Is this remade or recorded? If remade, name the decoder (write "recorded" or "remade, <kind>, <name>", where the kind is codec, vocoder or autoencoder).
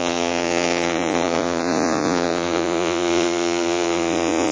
remade, vocoder, Vocos